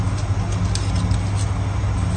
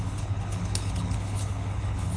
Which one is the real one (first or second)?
first